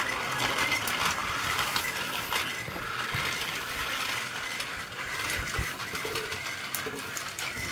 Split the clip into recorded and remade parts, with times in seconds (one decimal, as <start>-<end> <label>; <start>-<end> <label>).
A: 0.0-7.7 recorded